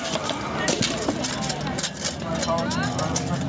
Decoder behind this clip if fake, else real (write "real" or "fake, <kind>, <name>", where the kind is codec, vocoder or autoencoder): real